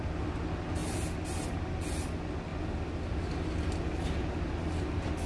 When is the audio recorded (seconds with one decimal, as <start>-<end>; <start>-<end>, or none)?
0.0-5.3